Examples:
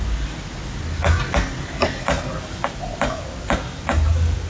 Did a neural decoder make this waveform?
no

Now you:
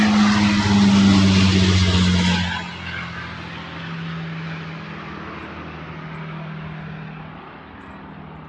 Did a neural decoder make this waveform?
no